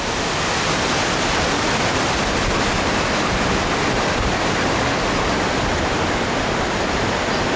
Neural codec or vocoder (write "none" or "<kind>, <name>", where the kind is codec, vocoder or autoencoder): none